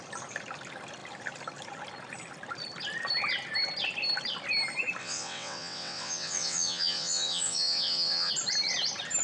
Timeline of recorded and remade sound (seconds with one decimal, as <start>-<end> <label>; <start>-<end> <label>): 0.0-5.0 recorded; 5.0-8.3 remade; 8.3-9.2 recorded